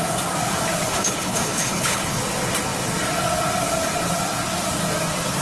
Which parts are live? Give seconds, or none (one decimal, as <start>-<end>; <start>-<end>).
0.0-0.9; 2.2-5.4